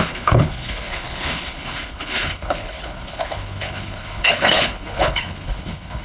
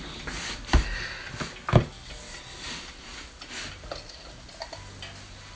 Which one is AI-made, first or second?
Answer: first